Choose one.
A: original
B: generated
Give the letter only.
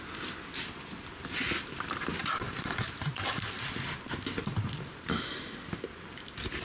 A